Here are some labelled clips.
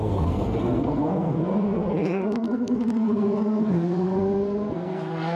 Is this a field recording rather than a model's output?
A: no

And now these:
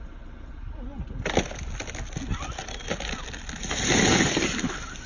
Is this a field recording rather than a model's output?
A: yes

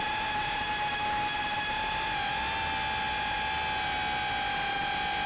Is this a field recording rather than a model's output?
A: yes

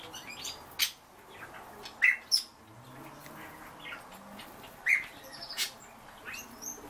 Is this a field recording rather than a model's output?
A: yes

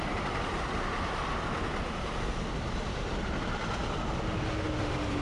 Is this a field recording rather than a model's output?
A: yes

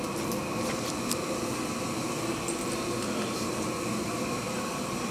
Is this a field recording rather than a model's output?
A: yes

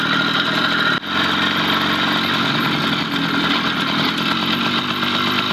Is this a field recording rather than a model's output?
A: yes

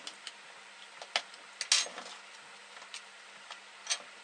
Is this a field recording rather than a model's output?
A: yes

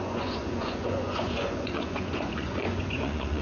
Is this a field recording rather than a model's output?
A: no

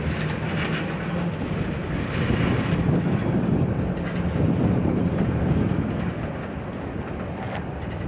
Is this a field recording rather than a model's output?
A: yes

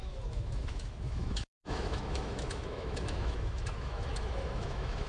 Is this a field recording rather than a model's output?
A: no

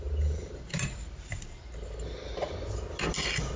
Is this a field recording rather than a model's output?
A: yes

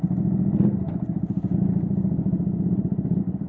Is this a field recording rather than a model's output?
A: yes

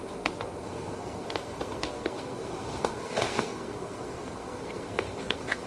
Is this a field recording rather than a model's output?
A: no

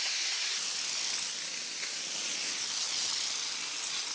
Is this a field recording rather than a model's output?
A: yes